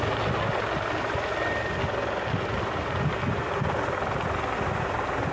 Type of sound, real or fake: real